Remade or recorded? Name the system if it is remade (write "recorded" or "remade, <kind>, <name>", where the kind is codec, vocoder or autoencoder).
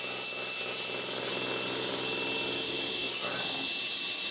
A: recorded